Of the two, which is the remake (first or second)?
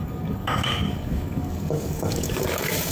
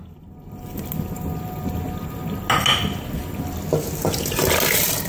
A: first